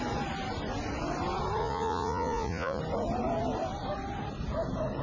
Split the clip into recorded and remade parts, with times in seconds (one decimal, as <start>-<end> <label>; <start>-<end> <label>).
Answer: 0.0-1.6 recorded; 1.6-2.8 remade; 2.8-5.0 recorded

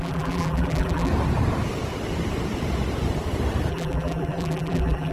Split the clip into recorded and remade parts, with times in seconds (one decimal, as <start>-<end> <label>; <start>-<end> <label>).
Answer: 0.0-1.1 remade; 1.1-3.7 recorded; 3.7-5.1 remade

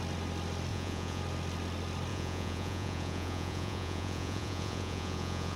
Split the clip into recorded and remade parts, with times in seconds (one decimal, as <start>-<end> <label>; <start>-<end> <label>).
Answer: 0.0-0.7 recorded; 0.7-1.2 remade; 1.2-2.1 recorded; 2.1-5.6 remade

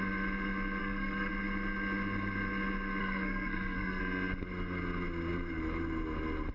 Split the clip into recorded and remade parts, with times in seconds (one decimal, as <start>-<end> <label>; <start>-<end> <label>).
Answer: 0.0-0.8 recorded; 0.8-1.3 remade; 1.3-3.0 recorded; 3.0-4.0 remade; 4.0-6.5 recorded

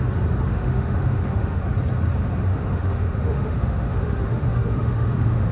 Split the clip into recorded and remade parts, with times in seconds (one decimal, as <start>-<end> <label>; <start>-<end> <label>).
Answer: 0.0-0.5 recorded; 0.5-1.6 remade; 1.6-2.5 recorded; 2.5-5.5 remade

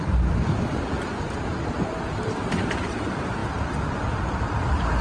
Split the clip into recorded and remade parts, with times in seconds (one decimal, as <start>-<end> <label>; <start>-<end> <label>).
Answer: 0.0-1.5 remade; 1.5-2.2 recorded; 2.2-3.4 remade; 3.4-4.0 recorded; 4.0-5.0 remade

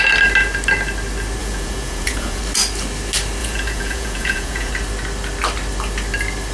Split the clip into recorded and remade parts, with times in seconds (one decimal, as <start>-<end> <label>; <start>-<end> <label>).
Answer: 0.0-1.4 recorded; 1.4-2.4 remade; 2.4-3.4 recorded; 3.4-4.7 remade; 4.7-6.5 recorded